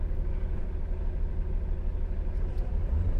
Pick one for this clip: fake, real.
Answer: real